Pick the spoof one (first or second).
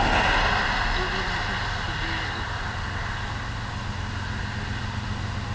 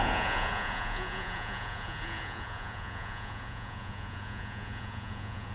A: second